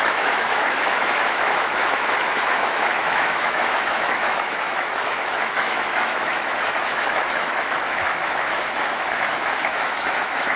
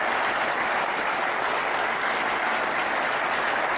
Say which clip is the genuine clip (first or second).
second